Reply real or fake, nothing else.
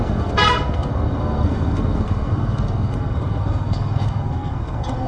fake